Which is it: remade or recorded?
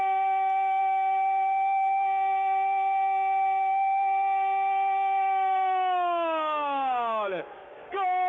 remade